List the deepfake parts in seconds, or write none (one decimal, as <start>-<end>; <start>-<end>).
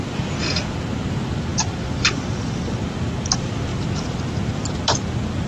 1.5-2.7